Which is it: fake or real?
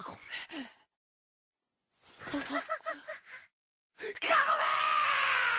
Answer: fake